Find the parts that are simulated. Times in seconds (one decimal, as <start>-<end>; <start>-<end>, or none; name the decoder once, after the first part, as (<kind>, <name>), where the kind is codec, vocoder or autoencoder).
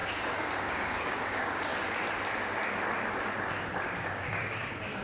0.0-1.7 (codec, DAC); 4.0-5.0